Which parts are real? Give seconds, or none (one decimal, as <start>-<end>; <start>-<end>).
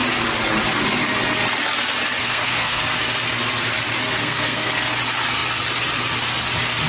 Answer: 0.0-2.2; 2.8-4.2; 4.7-6.9